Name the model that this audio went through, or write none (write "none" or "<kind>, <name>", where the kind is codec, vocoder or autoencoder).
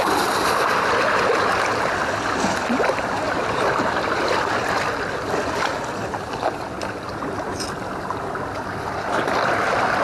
none